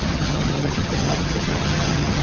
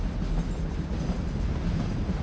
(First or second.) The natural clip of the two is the second